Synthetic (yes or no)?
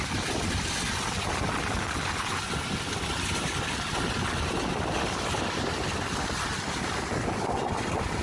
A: no